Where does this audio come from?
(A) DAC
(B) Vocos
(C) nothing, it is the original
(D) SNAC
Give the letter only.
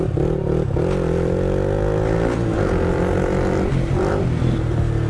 C